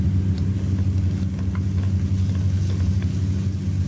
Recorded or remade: recorded